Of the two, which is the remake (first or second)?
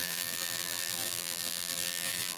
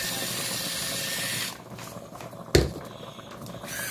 first